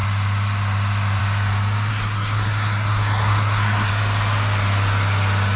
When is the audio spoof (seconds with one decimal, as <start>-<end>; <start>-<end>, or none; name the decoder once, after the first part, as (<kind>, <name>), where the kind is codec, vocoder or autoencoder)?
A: 1.9-3.9 (codec, SNAC)